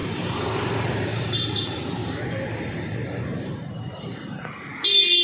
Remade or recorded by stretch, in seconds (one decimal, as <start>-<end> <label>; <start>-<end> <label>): 0.0-1.6 remade; 1.6-2.0 recorded; 2.0-4.5 remade; 4.5-5.2 recorded